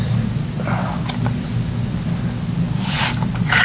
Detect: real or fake real